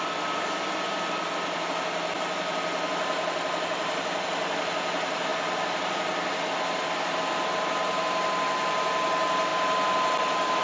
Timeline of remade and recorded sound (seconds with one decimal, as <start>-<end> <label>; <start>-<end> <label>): 0.0-5.3 recorded; 5.3-5.8 remade; 5.8-10.6 recorded